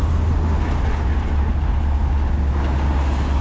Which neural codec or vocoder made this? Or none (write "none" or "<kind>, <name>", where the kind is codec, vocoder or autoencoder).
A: none